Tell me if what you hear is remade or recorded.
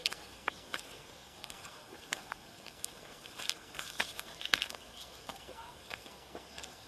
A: remade